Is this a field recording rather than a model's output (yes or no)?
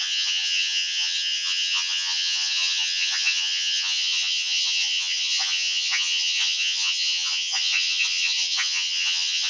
no